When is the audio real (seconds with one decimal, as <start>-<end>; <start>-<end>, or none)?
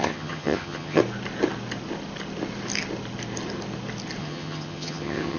1.0-4.2